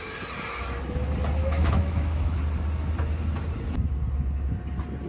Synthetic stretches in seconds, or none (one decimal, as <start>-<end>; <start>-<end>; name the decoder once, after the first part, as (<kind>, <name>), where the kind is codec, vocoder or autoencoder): 1.4-2.4 (autoencoder, DAC-VAE)